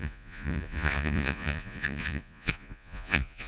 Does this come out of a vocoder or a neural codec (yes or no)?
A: yes